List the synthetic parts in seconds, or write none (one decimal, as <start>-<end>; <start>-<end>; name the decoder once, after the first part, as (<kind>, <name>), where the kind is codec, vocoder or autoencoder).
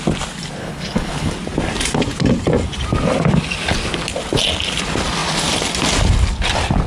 0.6-1.3 (codec, HILCodec)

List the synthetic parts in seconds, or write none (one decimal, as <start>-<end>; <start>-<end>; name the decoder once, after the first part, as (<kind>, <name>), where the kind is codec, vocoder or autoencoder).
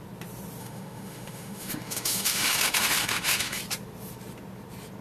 0.6-3.6 (autoencoder, DAC-VAE)